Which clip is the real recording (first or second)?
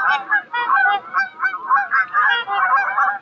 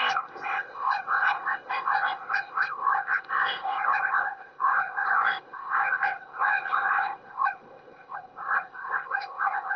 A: first